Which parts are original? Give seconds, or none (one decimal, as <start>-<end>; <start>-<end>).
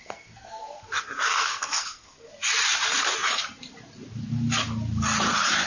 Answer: 2.3-5.7